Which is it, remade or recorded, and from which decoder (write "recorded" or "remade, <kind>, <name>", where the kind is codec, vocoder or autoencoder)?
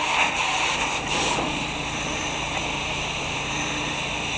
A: recorded